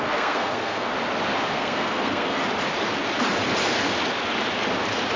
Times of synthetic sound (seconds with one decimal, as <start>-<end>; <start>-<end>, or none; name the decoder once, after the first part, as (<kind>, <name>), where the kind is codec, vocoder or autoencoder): 0.0-0.9 (codec, SNAC); 1.5-2.4